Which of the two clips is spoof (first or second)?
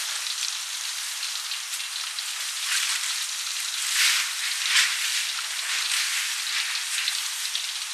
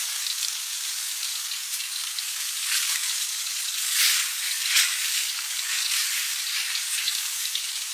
second